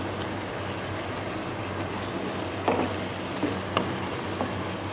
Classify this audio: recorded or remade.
recorded